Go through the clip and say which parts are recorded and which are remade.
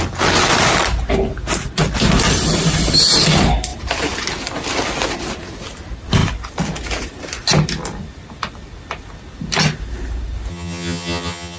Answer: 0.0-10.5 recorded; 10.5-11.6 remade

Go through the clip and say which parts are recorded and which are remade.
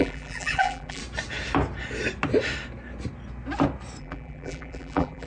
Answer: 0.0-1.0 remade; 1.0-4.0 recorded; 4.0-5.3 remade